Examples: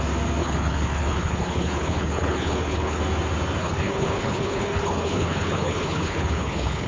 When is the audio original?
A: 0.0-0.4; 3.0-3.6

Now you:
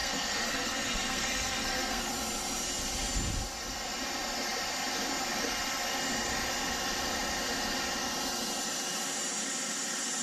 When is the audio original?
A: 2.1-10.2

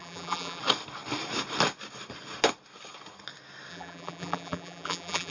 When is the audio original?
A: 0.6-3.7

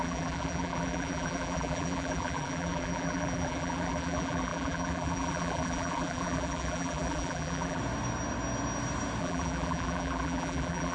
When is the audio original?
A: 7.8-9.2